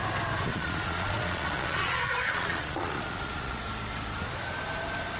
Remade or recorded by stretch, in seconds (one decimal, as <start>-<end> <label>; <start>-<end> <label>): 0.0-0.5 recorded; 0.5-3.6 remade; 3.6-5.2 recorded